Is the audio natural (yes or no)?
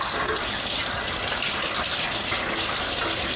yes